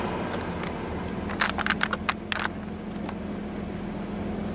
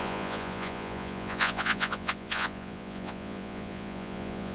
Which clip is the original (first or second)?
first